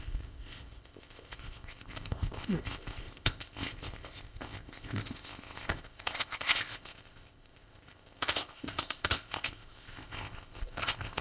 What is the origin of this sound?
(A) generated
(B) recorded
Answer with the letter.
A